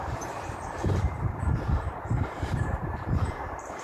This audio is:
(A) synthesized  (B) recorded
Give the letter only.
A